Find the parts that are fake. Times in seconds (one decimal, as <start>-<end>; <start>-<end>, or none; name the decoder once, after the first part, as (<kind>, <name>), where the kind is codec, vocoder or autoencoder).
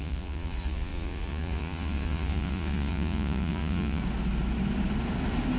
0.0-4.0 (vocoder, Vocos)